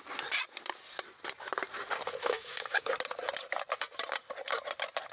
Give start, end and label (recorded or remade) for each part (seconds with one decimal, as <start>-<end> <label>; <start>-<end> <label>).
0.0-2.2 recorded; 2.2-2.9 remade; 2.9-5.1 recorded